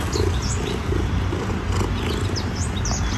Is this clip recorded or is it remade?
recorded